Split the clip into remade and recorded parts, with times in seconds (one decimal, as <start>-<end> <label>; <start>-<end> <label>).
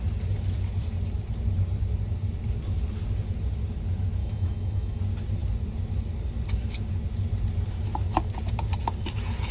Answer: 0.0-4.2 recorded; 4.2-5.0 remade; 5.0-9.5 recorded